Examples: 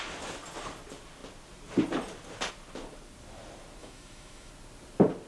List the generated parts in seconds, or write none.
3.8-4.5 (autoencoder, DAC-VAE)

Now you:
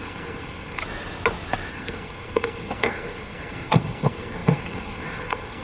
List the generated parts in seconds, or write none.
0.0-0.8 (codec, SNAC); 1.7-5.6

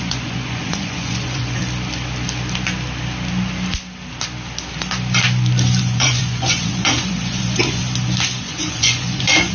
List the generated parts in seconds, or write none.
0.0-1.6 (vocoder, Vocos); 5.8-7.8; 8.4-9.5